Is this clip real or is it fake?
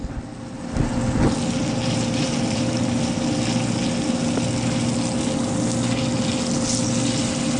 real